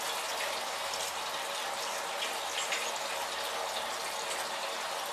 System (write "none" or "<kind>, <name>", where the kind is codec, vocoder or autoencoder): none